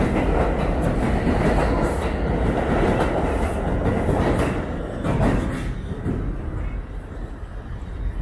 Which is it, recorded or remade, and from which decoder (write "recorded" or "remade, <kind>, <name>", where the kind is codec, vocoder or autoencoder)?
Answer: recorded